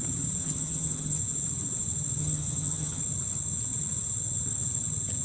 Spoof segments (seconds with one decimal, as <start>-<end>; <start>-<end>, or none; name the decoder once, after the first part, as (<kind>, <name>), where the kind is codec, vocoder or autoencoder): 0.4-1.2 (vocoder, HiFi-GAN); 2.2-3.0